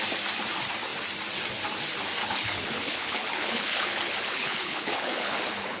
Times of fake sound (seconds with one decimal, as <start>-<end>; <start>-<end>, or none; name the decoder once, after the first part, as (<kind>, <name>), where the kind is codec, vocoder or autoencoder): 2.2-5.8 (codec, HILCodec)